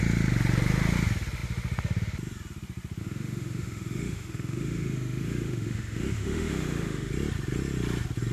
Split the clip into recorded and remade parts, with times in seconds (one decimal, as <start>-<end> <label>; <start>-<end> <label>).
0.0-3.0 recorded; 3.0-7.1 remade; 7.1-8.3 recorded